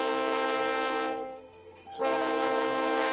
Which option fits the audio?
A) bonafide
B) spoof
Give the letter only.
B